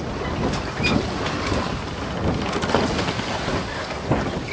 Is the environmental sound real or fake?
real